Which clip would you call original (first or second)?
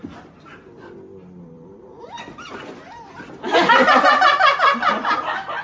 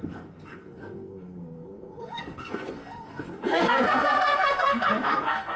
first